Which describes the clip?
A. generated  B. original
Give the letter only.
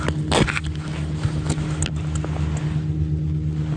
B